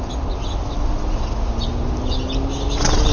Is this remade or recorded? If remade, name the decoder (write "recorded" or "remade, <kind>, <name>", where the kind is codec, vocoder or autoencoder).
recorded